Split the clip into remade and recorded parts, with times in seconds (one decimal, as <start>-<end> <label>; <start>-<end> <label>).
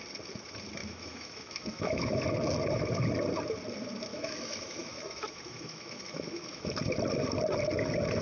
0.0-0.8 recorded; 0.8-2.2 remade; 2.2-4.1 recorded; 4.1-6.7 remade; 6.7-8.2 recorded